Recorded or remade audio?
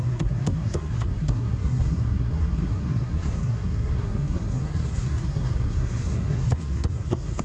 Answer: remade